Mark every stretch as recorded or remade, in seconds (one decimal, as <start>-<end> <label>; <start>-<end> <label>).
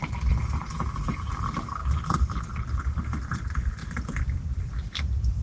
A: 0.0-3.8 recorded; 3.8-4.6 remade; 4.6-5.4 recorded